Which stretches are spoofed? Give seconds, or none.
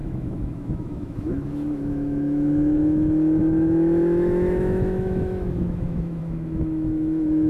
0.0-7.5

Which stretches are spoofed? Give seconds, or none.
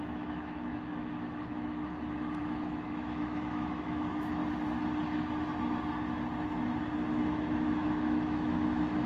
0.0-1.9; 2.4-4.4; 7.1-9.1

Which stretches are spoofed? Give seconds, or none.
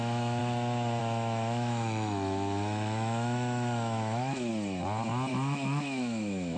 0.0-0.4; 1.0-4.5; 5.3-6.6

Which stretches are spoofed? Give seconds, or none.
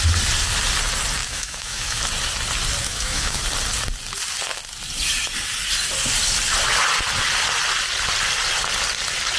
1.2-2.0; 2.8-3.4